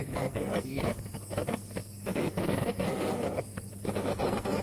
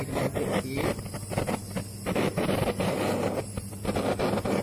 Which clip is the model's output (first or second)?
first